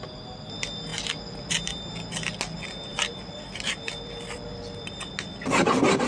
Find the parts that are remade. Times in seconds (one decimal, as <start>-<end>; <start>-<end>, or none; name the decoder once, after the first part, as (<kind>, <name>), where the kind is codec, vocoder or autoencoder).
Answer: 2.9-5.1 (vocoder, BigVGAN v2)

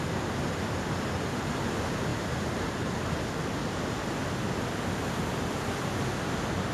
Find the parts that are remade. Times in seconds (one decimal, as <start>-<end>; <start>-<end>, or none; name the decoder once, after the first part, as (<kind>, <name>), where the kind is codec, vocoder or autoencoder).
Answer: 2.1-4.1 (vocoder, BigVGAN v2)

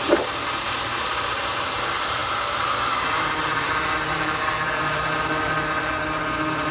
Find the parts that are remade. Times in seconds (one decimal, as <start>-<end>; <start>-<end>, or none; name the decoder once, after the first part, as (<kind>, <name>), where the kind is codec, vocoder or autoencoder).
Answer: 0.0-6.7 (vocoder, BigVGAN v2)

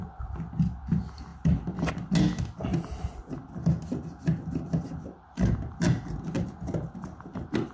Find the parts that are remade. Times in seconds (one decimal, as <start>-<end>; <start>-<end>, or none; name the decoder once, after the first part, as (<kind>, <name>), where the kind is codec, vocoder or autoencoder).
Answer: none

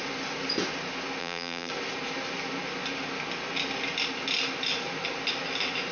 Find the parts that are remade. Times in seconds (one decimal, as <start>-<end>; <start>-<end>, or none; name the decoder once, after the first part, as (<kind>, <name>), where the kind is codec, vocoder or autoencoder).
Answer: 1.2-1.7 (vocoder, BigVGAN v2)

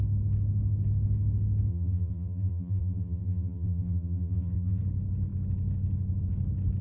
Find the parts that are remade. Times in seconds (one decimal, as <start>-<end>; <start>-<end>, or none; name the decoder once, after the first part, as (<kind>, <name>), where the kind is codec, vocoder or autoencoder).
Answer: 1.7-4.8 (vocoder, BigVGAN v2)

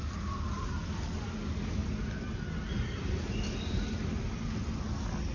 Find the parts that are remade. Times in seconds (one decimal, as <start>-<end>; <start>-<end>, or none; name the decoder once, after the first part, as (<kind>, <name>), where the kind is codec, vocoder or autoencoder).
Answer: none